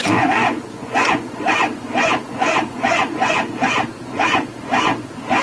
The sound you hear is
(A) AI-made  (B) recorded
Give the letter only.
A